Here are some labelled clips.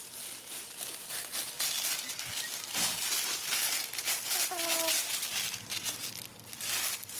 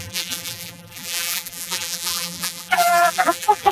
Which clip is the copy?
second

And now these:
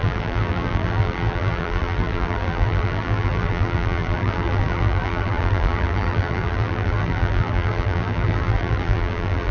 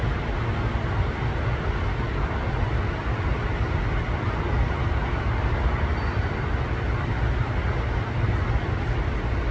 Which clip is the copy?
first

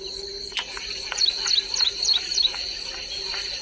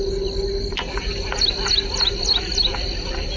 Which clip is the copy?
first